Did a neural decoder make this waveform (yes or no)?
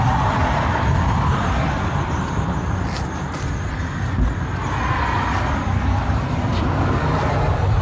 no